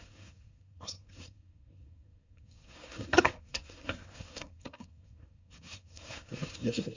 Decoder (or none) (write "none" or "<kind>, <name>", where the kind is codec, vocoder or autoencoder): codec, SNAC